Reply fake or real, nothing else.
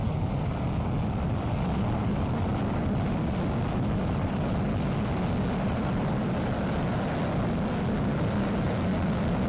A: real